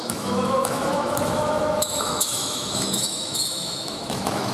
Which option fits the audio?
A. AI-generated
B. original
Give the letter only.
A